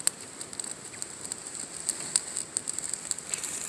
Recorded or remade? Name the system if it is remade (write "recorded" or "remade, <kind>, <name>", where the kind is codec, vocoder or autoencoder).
recorded